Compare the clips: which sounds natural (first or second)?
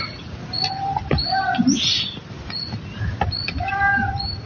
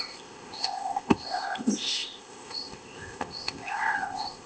first